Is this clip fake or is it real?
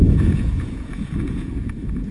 fake